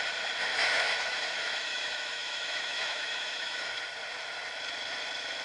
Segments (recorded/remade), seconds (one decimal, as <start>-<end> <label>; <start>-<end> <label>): 0.0-0.5 recorded; 0.5-3.7 remade; 3.7-5.4 recorded